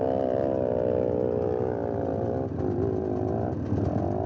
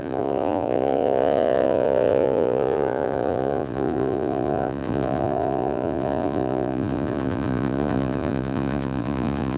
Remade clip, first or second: second